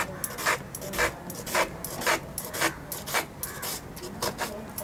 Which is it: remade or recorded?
recorded